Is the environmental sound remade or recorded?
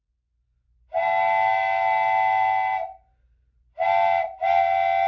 recorded